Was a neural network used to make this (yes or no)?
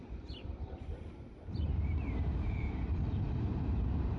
yes